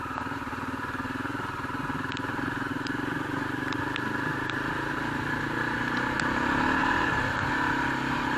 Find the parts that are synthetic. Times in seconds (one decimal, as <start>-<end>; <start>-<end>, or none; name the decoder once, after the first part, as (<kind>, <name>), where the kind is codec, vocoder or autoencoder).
2.7-3.8 (vocoder, BigVGAN v2); 6.8-7.5

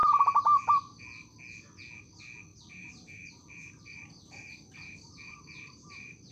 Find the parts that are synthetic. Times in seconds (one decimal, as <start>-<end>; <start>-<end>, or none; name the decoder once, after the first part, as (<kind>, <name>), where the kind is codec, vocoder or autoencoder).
2.5-6.3 (vocoder, BigVGAN v2)

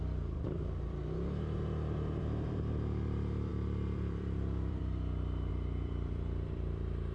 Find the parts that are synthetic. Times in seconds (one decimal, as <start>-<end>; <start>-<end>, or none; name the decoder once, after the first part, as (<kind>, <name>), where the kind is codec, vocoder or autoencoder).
0.0-1.0 (vocoder, BigVGAN v2); 2.2-7.1

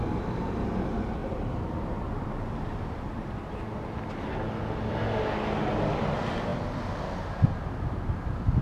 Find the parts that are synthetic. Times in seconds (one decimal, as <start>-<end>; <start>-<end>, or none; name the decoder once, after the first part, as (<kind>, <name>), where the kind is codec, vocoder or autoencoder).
1.2-3.5 (vocoder, BigVGAN v2)